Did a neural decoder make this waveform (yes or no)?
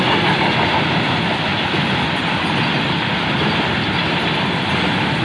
no